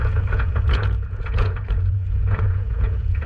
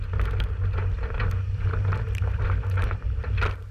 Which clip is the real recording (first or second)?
second